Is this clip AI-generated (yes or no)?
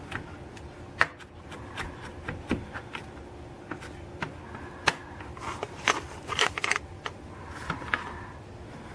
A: no